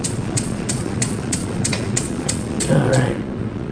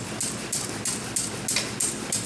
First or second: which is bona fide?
second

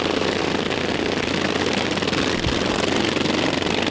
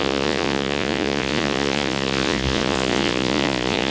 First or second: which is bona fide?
first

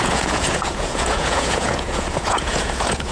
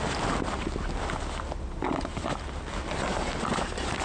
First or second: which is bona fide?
second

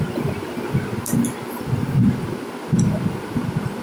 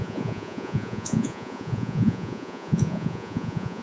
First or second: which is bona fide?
first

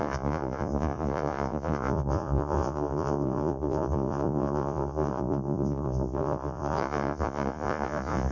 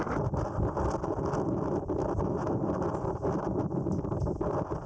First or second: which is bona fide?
second